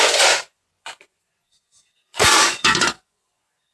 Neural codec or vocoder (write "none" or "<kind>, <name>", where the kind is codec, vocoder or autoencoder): vocoder, Vocos